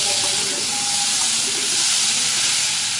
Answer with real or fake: real